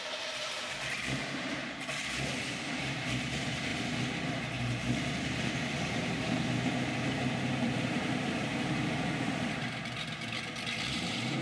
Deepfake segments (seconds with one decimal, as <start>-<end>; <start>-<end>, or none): 0.0-2.0; 2.7-3.7; 4.3-11.4